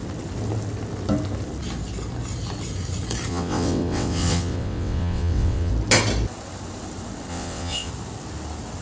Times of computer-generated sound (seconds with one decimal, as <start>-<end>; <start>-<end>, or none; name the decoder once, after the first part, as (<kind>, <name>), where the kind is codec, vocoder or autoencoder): 3.3-5.7 (vocoder, WaveNeXt); 7.3-7.9